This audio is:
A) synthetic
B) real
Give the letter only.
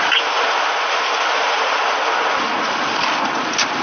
B